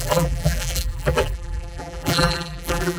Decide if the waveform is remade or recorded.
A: remade